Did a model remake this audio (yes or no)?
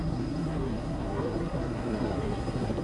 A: yes